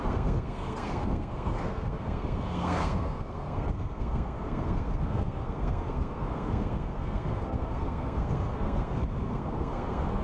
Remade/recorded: remade